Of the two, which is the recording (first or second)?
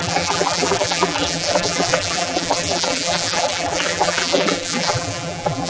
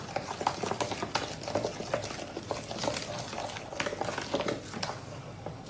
second